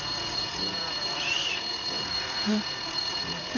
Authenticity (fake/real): fake